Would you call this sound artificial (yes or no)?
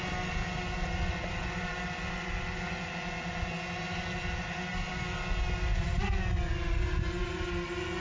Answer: no